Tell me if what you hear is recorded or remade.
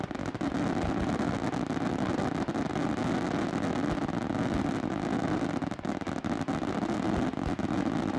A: recorded